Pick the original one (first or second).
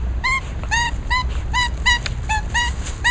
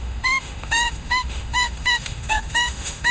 first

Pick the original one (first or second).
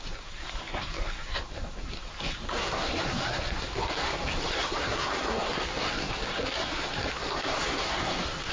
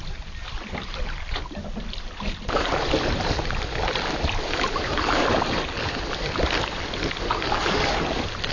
second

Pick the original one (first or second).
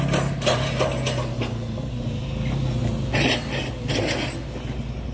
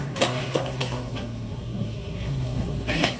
first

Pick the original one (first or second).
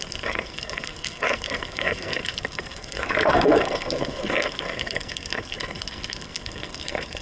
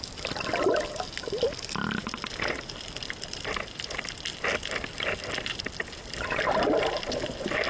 second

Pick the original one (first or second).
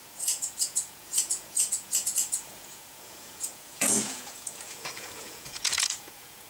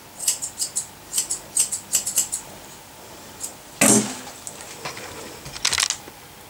second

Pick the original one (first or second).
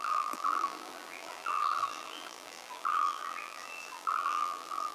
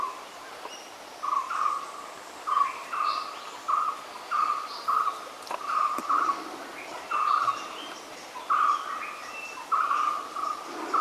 second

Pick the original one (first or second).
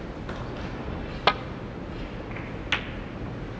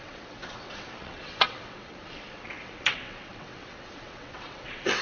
first